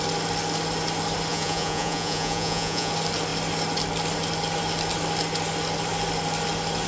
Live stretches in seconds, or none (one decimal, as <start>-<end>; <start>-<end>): 0.0-1.3; 2.9-6.9